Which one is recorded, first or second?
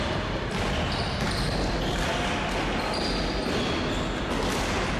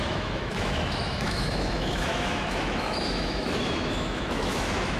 first